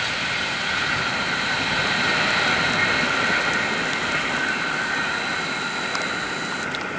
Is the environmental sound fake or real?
real